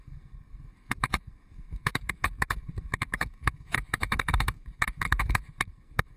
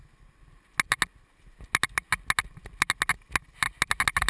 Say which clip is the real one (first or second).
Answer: second